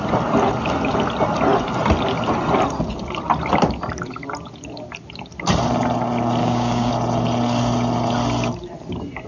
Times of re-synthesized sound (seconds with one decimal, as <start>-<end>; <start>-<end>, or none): 6.4-6.9